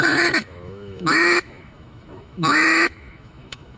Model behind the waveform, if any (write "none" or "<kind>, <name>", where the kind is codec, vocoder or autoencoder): autoencoder, DAC-VAE